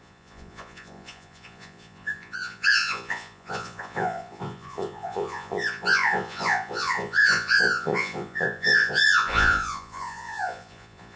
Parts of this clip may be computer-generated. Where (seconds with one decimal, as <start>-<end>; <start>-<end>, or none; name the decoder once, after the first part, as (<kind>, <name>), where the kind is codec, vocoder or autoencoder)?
0.0-11.2 (vocoder, Vocos)